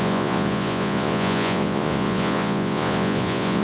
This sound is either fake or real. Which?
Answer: fake